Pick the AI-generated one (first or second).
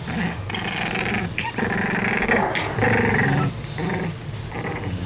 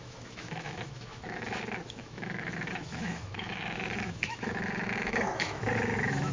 second